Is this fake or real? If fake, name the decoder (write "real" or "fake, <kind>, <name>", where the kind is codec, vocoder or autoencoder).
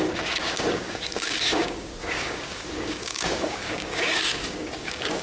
fake, codec, DAC